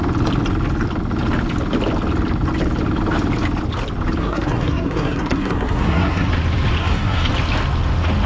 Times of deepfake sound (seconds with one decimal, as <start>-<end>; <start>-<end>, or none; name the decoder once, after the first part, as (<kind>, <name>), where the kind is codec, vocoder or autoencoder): 4.2-6.3 (codec, SNAC); 6.8-7.3